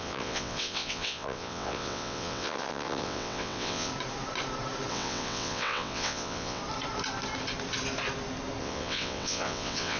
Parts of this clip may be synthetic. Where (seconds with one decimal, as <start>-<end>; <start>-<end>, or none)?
0.0-3.9; 4.9-6.6; 8.6-10.0